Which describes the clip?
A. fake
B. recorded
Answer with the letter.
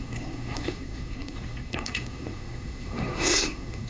A